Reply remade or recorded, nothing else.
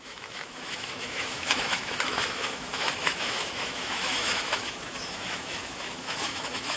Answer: remade